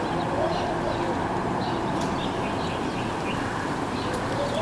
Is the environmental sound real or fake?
real